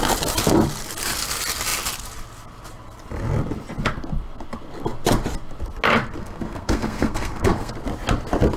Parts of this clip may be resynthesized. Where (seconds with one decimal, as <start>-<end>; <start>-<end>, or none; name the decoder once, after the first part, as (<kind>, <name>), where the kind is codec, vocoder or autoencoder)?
6.2-7.7 (codec, SNAC)